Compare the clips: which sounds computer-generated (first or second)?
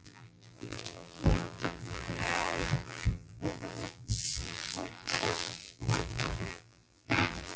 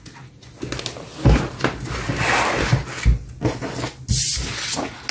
first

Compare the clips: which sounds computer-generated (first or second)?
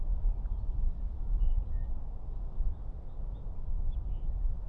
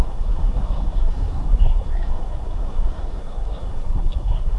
second